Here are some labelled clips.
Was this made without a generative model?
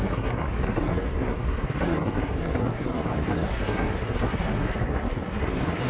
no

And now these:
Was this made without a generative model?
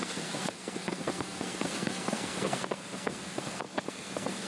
no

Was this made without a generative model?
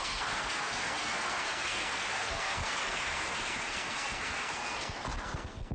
no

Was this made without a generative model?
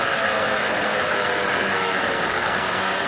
no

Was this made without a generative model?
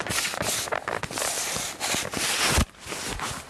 yes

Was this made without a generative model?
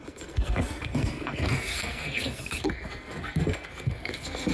no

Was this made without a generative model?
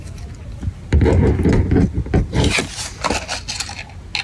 yes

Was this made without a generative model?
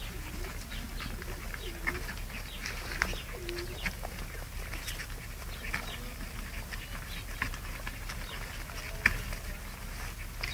yes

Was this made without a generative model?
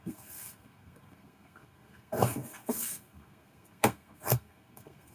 no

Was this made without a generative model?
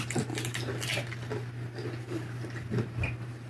yes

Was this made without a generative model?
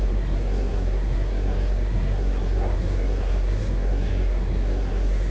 no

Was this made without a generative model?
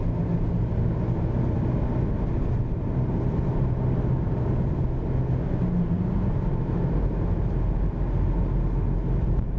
yes